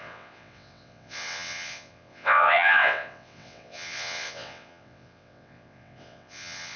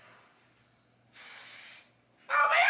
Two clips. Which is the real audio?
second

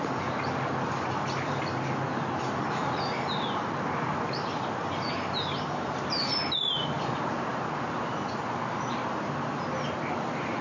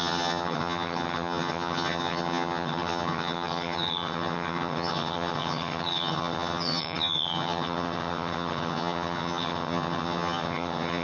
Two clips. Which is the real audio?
first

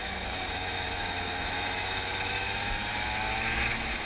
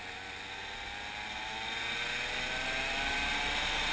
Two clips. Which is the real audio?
second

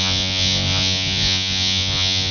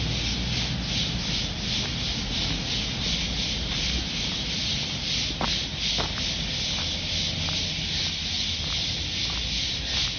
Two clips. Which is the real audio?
second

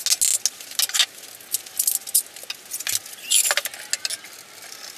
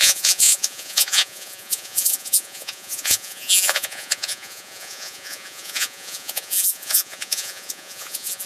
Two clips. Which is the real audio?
first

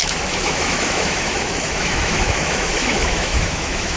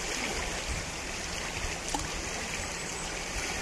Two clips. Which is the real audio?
second